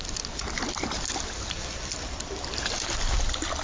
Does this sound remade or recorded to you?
recorded